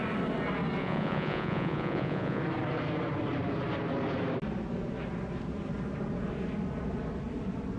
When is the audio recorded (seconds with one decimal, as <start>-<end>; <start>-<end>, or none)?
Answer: 0.0-0.8; 2.4-7.8